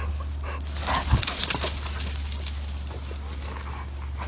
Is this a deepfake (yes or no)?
no